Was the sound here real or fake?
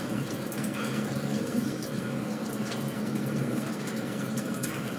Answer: fake